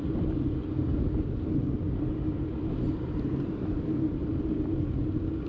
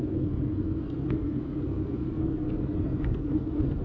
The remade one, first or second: second